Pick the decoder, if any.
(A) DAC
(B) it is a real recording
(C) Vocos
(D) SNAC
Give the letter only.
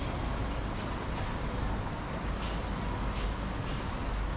B